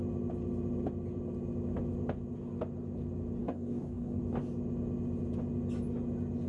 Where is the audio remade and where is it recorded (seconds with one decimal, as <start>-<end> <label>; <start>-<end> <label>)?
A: 0.0-3.4 recorded; 3.4-4.2 remade; 4.2-6.5 recorded